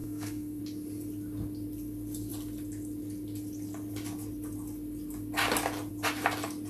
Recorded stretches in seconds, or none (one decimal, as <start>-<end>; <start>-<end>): 0.6-6.7

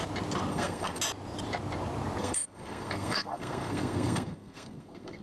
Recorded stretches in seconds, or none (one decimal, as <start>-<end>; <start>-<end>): 0.0-0.5; 1.0-2.2

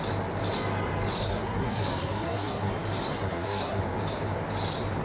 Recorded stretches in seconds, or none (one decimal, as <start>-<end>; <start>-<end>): 0.0-1.3; 2.7-3.1; 3.8-5.0

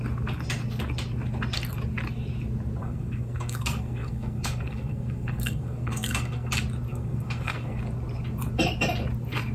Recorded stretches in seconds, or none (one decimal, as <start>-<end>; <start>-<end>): 0.0-2.8; 6.5-6.9; 7.8-9.5